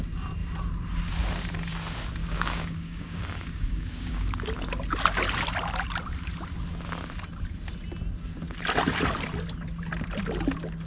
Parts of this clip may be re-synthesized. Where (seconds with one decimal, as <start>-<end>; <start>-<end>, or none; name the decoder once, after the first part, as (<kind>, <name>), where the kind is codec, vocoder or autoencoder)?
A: 2.2-4.3 (codec, DAC)